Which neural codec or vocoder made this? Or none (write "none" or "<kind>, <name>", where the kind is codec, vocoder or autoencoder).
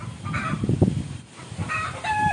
none